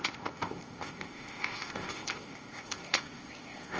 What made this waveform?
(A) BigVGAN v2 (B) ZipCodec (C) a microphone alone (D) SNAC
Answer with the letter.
B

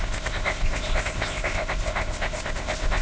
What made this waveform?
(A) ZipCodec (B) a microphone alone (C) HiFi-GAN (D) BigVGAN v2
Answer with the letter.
A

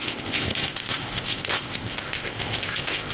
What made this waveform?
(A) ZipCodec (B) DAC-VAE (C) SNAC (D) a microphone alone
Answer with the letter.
A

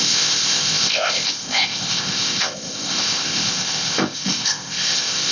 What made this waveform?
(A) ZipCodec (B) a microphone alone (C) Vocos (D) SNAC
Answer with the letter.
A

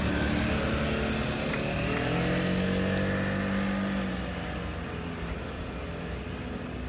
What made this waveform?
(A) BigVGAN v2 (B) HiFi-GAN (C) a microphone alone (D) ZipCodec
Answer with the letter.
C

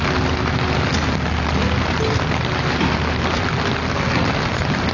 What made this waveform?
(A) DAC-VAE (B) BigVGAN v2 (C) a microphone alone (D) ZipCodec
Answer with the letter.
C